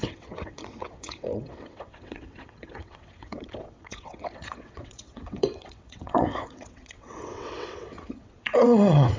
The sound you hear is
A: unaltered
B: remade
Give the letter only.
B